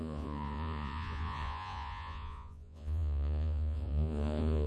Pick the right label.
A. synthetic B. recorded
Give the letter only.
A